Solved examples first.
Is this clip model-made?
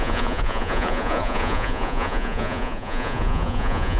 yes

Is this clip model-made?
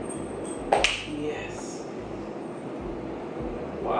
no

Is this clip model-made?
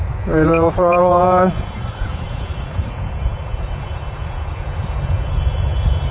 yes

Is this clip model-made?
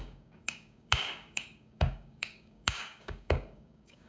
yes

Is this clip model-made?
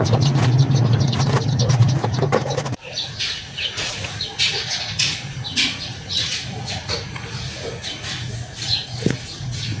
yes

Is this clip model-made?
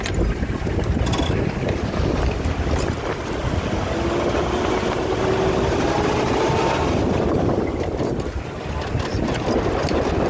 no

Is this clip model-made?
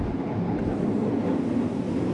no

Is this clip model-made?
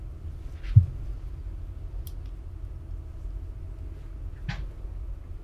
no